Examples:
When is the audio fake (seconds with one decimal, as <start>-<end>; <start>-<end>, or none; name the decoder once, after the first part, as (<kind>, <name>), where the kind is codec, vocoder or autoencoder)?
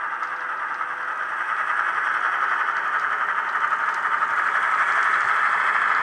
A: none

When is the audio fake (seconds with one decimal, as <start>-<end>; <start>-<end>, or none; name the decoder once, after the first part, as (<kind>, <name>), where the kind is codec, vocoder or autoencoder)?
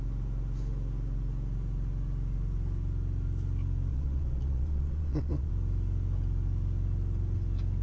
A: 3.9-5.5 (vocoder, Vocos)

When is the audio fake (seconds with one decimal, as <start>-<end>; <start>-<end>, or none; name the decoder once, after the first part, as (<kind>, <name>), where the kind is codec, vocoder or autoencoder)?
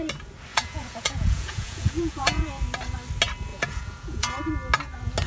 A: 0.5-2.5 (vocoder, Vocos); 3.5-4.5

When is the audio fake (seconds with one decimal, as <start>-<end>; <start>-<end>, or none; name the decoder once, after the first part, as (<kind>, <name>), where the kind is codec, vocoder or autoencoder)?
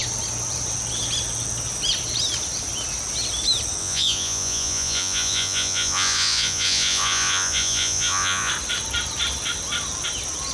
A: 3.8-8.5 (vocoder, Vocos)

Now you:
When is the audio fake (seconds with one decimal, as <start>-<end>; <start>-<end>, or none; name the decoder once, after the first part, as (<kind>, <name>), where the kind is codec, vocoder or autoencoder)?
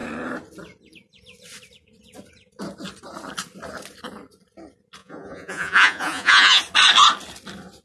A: 5.0-6.6 (vocoder, Vocos)